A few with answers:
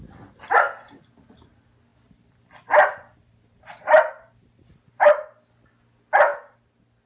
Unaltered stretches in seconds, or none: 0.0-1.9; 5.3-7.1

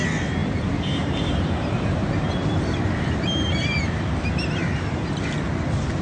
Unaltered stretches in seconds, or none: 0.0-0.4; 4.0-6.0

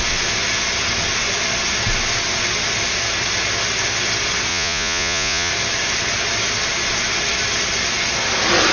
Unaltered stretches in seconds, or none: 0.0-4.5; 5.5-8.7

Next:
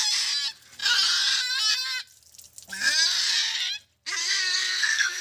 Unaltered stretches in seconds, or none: 0.0-4.2

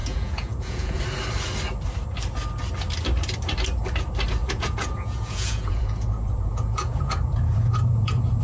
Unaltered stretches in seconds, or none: 1.0-4.4

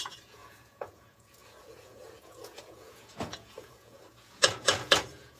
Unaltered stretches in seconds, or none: none